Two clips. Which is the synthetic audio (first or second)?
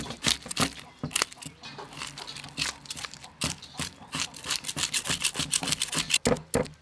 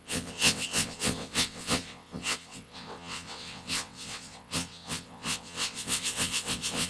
second